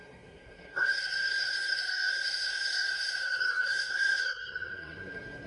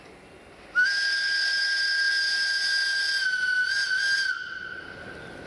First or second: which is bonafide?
second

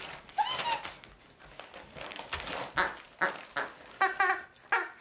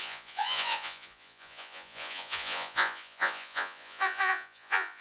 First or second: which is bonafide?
first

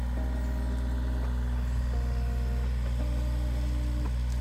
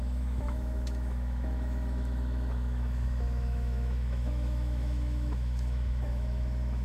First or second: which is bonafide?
first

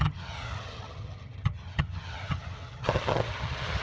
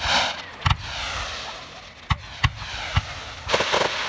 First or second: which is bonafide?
second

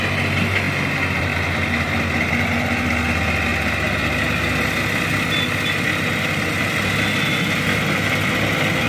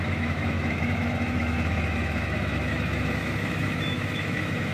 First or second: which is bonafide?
first